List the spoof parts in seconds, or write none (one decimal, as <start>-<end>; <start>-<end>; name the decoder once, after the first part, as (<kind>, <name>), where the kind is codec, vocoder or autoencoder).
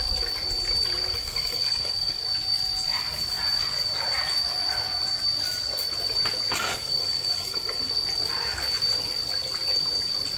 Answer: 1.2-2.2 (codec, SNAC); 6.7-7.9